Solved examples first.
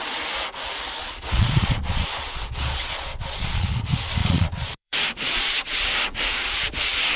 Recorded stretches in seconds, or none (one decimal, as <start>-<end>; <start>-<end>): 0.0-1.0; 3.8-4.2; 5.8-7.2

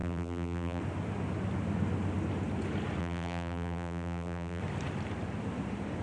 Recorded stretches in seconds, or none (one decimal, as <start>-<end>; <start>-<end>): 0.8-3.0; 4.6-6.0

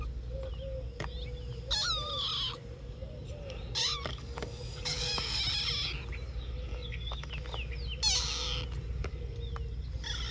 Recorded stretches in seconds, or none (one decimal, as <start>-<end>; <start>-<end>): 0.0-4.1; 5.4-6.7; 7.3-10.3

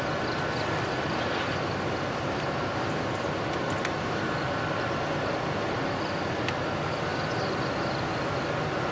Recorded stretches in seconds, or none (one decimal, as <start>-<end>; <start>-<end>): 0.0-8.9